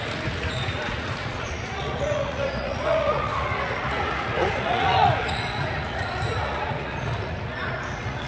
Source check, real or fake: fake